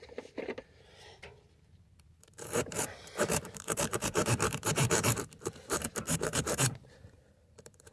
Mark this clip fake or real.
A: fake